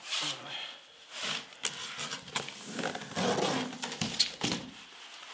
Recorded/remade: recorded